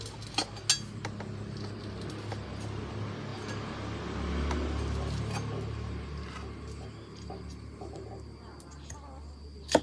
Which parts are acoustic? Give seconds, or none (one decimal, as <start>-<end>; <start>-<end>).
0.0-9.8